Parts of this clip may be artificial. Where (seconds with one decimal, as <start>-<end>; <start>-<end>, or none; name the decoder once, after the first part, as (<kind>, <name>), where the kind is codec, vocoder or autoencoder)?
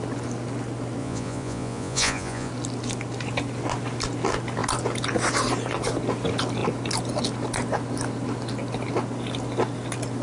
1.0-2.5 (vocoder, Vocos)